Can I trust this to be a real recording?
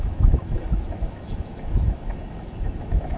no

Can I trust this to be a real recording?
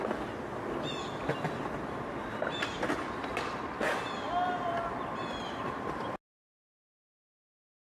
yes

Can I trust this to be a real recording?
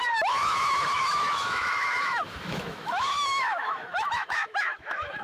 no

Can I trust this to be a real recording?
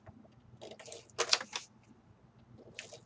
yes